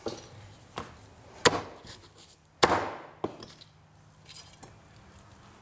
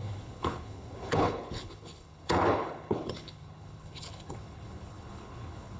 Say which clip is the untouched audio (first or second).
first